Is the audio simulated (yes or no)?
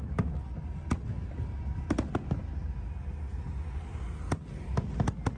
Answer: no